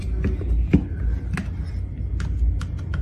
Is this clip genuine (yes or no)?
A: yes